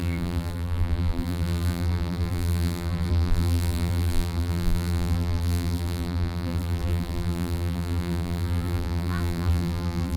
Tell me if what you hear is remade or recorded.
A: remade